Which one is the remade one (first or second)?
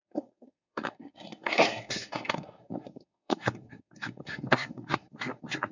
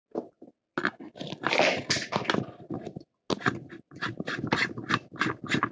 first